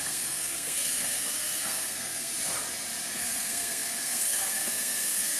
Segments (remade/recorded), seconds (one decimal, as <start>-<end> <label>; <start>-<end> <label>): 0.0-2.3 remade; 2.3-3.1 recorded; 3.1-5.4 remade